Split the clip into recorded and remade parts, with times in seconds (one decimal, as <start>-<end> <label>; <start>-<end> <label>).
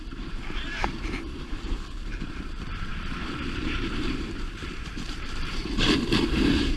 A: 0.0-6.8 remade